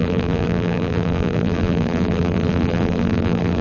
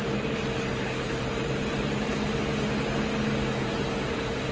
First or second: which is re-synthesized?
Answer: first